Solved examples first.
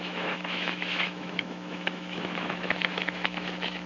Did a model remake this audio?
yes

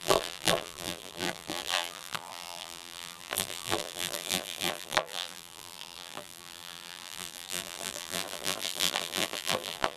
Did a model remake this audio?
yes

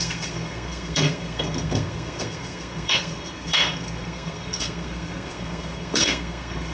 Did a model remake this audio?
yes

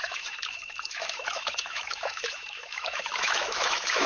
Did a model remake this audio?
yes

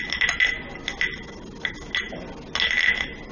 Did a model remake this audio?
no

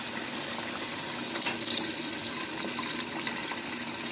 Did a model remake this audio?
no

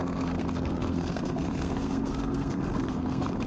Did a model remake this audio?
yes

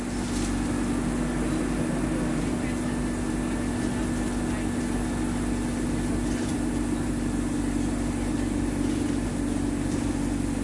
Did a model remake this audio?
no